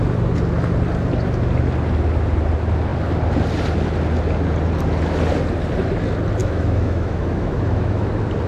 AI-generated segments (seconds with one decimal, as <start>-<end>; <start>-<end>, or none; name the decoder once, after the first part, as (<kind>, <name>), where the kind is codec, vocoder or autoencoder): 6.4-8.1 (autoencoder, DAC-VAE)

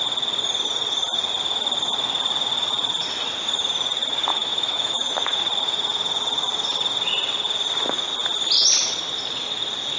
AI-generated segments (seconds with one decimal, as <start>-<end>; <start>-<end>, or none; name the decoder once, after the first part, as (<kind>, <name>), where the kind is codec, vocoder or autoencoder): 4.3-5.4 (autoencoder, DAC-VAE)

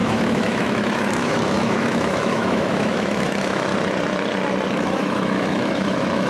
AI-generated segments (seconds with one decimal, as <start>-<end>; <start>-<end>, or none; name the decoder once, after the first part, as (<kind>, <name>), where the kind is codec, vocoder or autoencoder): 0.0-3.7 (autoencoder, DAC-VAE); 4.7-6.3

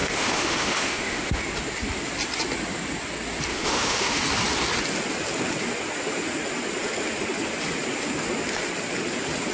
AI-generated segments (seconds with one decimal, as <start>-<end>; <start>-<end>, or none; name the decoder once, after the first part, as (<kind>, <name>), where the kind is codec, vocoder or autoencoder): 0.0-1.4 (autoencoder, DAC-VAE); 3.5-4.2

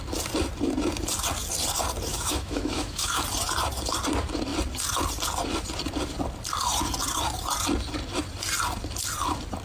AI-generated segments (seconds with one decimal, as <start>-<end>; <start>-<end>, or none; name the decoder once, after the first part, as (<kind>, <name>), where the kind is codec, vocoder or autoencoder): 2.1-3.2 (autoencoder, DAC-VAE)

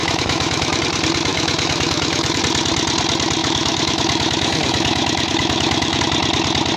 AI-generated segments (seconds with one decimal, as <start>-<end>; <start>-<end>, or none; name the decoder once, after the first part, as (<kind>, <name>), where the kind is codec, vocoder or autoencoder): 0.0-0.8 (autoencoder, DAC-VAE); 1.3-2.4; 3.4-6.0

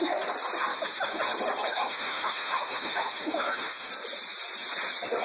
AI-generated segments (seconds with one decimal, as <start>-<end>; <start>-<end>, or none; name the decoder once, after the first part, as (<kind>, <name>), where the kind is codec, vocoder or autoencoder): 0.7-1.2 (autoencoder, DAC-VAE); 1.7-3.9

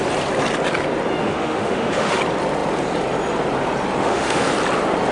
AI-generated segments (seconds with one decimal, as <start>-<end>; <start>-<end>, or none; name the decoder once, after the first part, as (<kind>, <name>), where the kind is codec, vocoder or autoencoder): 1.2-2.2 (autoencoder, DAC-VAE); 4.0-4.5